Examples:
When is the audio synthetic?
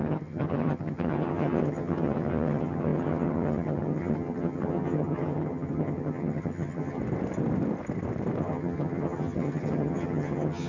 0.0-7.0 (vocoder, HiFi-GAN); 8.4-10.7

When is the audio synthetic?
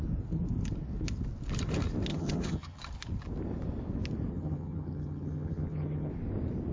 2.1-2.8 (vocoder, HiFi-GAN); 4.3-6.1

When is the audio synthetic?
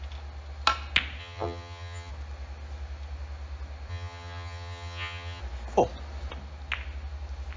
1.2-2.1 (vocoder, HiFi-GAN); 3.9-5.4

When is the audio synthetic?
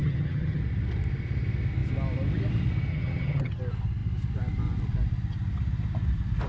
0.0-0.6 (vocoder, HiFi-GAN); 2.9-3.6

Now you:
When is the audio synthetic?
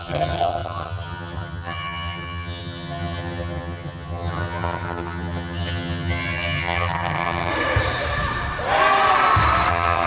0.0-7.5 (vocoder, HiFi-GAN); 9.7-10.1